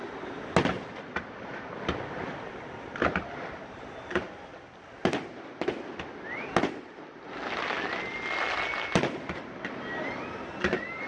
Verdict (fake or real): real